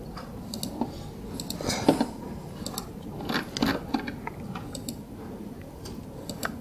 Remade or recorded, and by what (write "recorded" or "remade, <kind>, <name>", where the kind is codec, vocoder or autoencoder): recorded